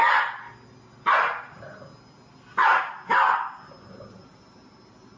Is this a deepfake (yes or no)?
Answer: no